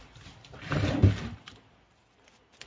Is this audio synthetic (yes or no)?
yes